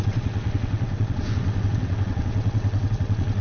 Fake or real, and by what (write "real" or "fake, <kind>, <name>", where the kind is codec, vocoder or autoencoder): fake, vocoder, WaveNeXt